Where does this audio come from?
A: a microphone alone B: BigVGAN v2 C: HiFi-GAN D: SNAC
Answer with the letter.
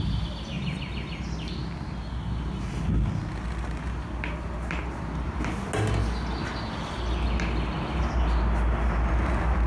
A